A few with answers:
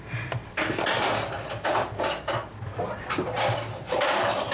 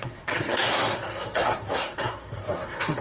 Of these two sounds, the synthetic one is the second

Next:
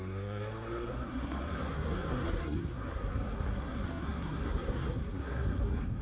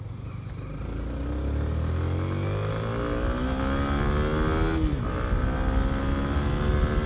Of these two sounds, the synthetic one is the first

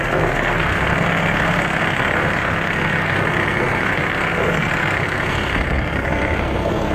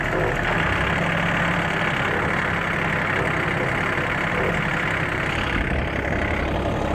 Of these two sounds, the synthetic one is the first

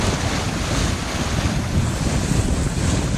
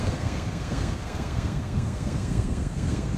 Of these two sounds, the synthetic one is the second